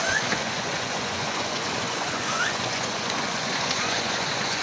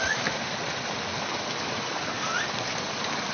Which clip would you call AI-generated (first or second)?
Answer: first